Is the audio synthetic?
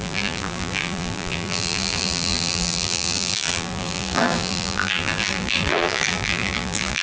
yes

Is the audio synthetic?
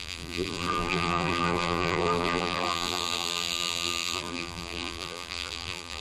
yes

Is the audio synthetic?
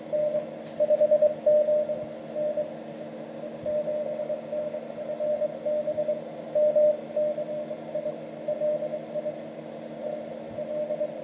no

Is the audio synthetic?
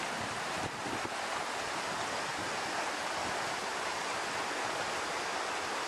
yes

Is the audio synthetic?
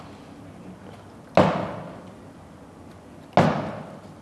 no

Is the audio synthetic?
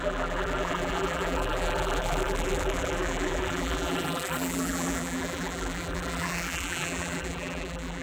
yes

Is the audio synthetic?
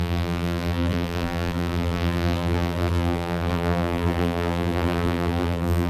yes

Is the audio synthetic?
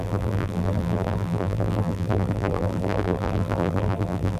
yes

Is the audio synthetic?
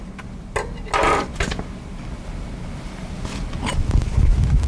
no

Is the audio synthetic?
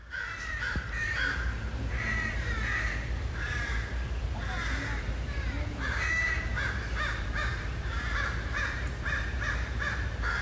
yes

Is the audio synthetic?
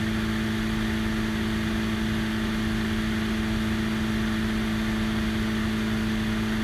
no